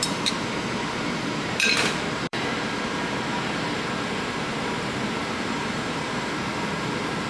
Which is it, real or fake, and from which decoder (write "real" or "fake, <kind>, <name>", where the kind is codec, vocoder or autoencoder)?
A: fake, vocoder, BigVGAN v2